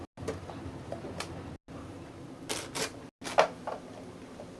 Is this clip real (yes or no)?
yes